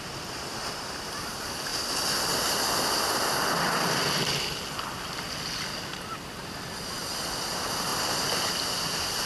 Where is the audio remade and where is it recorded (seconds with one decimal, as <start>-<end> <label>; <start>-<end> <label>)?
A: 0.0-1.7 remade; 1.7-6.5 recorded; 6.5-9.3 remade